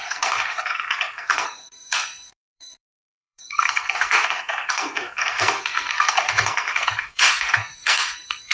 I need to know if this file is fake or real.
fake